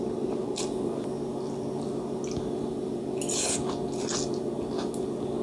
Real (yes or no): yes